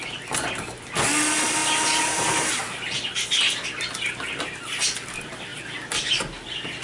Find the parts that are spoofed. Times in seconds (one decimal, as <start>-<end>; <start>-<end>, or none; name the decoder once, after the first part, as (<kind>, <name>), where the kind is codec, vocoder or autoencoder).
1.6-2.6 (vocoder, BigVGAN v2)